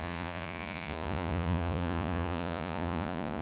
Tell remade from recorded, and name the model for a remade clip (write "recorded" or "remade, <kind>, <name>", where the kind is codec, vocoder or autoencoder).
remade, vocoder, Vocos